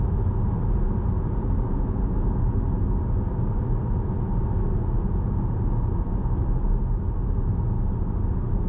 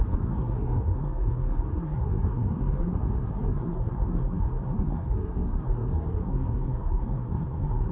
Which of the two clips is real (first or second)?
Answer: first